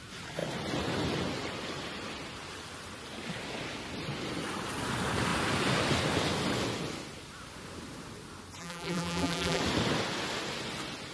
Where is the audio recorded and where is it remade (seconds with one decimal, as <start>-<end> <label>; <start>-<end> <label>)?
0.0-8.6 recorded; 8.6-9.6 remade; 9.6-11.1 recorded